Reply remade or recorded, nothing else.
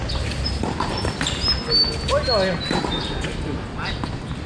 recorded